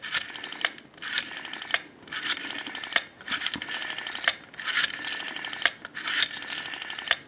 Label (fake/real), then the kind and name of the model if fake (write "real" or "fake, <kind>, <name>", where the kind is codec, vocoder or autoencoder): fake, vocoder, BigVGAN v2